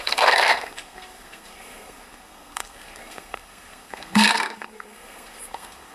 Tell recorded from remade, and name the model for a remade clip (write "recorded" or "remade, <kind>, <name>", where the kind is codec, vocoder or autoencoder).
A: remade, codec, SNAC